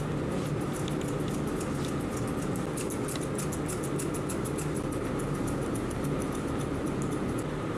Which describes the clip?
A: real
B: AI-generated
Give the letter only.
A